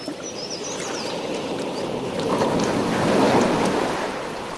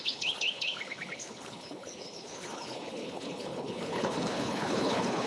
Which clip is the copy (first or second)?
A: second